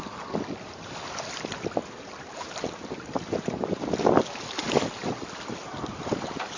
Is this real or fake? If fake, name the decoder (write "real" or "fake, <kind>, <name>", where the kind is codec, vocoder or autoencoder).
real